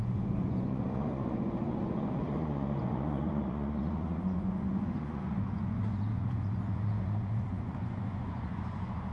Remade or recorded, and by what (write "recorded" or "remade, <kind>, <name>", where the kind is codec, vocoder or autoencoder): remade, vocoder, Vocos